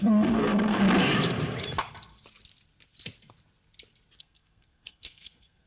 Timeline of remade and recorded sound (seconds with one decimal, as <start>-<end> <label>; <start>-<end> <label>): 0.0-0.8 remade; 0.8-4.2 recorded; 4.2-5.7 remade

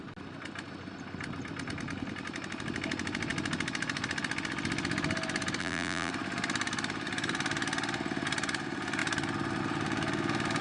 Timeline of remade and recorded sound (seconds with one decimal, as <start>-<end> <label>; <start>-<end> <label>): 0.0-5.6 recorded; 5.6-6.1 remade; 6.1-10.6 recorded

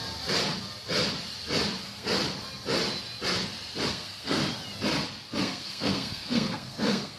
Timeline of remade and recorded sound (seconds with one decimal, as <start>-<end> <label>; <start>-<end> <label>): 0.0-1.8 recorded; 1.8-2.2 remade; 2.2-3.9 recorded; 3.9-4.4 remade; 4.4-5.4 recorded; 5.4-7.2 remade

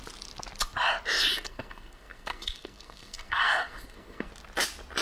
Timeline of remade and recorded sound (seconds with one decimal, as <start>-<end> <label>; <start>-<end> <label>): 0.0-1.3 recorded; 1.3-4.3 remade; 4.3-5.0 recorded

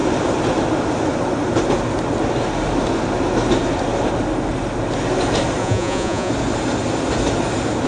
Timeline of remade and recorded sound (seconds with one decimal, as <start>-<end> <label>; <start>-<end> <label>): 0.0-5.6 recorded; 5.6-6.3 remade; 6.3-7.9 recorded

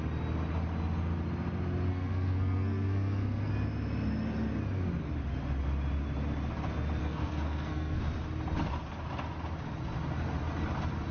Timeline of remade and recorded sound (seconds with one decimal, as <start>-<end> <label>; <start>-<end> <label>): 0.0-1.9 recorded; 1.9-3.5 remade; 3.5-7.0 recorded; 7.0-8.0 remade; 8.0-11.1 recorded